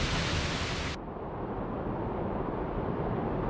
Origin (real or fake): real